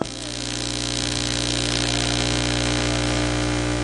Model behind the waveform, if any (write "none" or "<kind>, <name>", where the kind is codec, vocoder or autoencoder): none